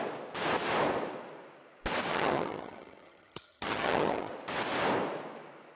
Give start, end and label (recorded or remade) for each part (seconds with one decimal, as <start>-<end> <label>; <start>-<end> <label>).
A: 0.0-2.1 recorded; 2.1-4.3 remade; 4.3-5.8 recorded